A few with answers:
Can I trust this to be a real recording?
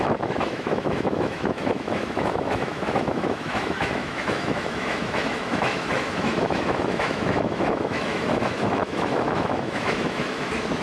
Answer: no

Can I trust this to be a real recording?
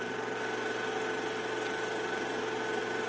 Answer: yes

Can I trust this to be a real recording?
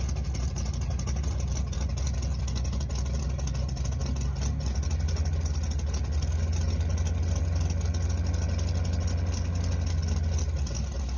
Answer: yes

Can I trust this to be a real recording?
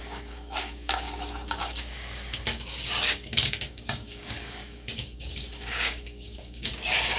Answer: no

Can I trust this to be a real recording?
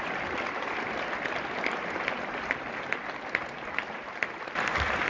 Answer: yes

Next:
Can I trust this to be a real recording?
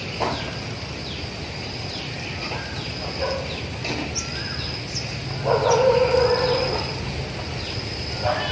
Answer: yes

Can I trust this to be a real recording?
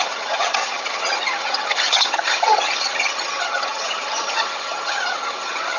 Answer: no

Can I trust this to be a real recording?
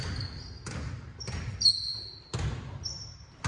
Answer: yes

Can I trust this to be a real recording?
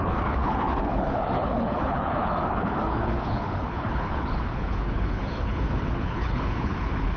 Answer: no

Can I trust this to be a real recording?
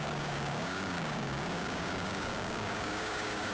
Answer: no